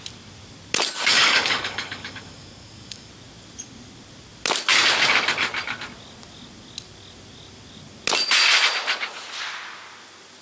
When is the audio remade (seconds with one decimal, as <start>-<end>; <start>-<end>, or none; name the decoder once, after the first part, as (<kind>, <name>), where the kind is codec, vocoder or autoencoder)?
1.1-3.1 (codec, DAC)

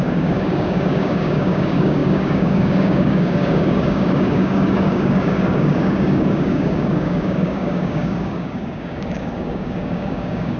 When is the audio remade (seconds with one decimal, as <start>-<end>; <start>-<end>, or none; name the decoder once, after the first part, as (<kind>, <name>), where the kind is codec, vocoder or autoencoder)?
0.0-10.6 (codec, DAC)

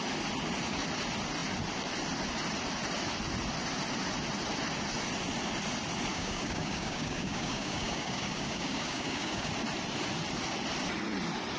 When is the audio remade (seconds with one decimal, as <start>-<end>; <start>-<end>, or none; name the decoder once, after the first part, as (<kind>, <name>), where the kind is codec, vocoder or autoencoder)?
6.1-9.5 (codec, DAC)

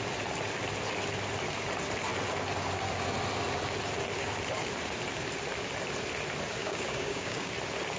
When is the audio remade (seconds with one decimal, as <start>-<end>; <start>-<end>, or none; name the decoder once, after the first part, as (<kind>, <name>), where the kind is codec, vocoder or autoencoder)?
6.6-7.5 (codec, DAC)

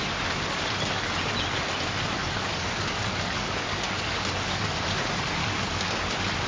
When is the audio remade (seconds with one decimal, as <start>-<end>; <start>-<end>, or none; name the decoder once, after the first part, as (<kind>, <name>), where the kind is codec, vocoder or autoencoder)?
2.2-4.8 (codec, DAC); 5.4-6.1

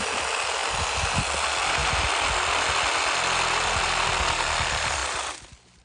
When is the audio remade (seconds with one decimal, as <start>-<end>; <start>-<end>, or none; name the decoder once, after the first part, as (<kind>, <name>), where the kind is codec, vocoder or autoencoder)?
none